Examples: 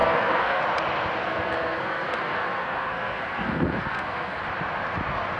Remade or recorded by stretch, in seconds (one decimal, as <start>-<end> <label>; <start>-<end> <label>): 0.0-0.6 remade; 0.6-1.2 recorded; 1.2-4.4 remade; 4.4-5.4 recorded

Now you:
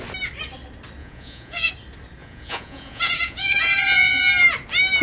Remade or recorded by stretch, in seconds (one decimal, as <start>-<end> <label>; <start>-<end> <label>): 0.0-1.0 recorded; 1.0-1.7 remade; 1.7-2.2 recorded; 2.2-4.2 remade; 4.2-5.0 recorded

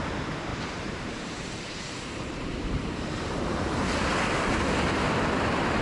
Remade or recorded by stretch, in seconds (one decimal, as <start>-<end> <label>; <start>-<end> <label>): 0.0-0.5 recorded; 0.5-4.0 remade; 4.0-5.8 recorded